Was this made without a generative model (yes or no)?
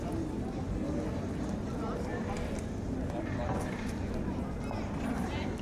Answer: yes